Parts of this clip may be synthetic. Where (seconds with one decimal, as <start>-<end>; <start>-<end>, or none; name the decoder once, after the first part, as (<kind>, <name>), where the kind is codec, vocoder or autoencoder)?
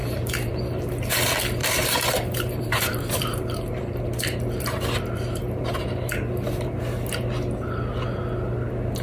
0.0-0.8 (vocoder, BigVGAN v2); 1.6-6.1